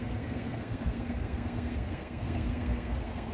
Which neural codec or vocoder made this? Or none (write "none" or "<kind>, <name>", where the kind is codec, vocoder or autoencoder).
codec, SNAC